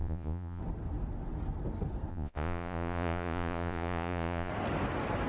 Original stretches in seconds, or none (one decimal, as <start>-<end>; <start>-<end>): 0.6-2.1; 4.5-5.3